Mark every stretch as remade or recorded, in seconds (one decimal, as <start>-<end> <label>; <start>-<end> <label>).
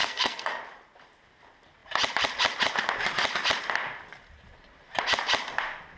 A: 0.0-0.6 remade; 0.6-6.0 recorded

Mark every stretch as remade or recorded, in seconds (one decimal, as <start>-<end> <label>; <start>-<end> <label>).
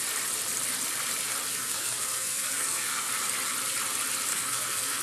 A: 0.0-1.5 recorded; 1.5-3.1 remade; 3.1-4.3 recorded; 4.3-5.0 remade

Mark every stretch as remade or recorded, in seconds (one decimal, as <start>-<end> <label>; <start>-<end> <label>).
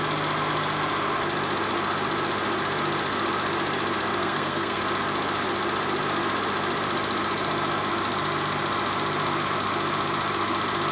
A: 0.0-4.2 recorded; 4.2-4.8 remade; 4.8-10.9 recorded